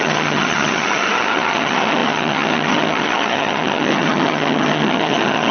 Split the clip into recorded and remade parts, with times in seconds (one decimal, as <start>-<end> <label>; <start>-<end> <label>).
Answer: 0.0-5.5 remade